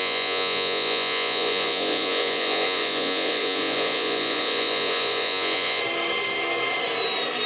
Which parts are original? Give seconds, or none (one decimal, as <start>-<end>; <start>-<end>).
5.8-7.5